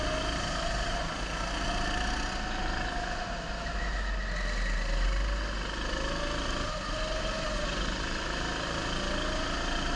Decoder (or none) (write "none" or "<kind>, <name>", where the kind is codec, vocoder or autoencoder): none